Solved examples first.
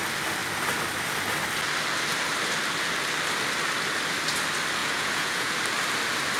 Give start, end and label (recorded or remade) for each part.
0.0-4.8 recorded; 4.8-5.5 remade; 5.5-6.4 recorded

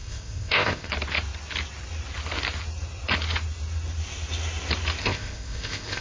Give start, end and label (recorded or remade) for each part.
0.0-0.9 remade; 0.9-5.0 recorded; 5.0-6.0 remade

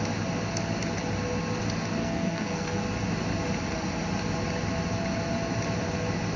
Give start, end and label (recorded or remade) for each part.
0.0-2.0 recorded; 2.0-2.8 remade; 2.8-6.4 recorded